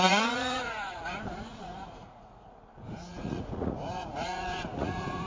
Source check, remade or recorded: remade